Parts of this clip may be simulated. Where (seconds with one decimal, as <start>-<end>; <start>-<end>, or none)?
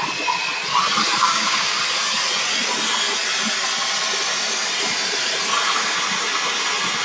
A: 1.2-1.8